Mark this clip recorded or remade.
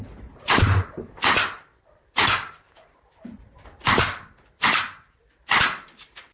recorded